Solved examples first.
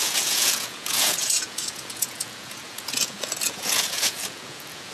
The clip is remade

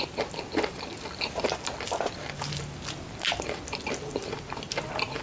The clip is recorded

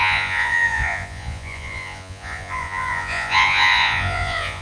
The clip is remade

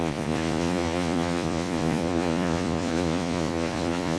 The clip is remade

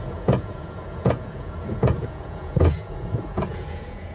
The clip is remade